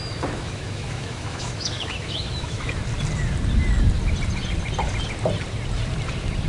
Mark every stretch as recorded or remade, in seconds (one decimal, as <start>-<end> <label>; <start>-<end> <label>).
0.0-2.8 remade; 2.8-6.5 recorded